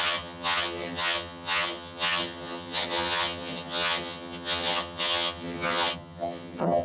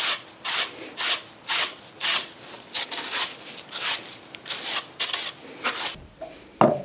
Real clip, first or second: second